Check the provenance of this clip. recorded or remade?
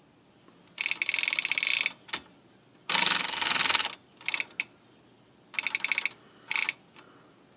recorded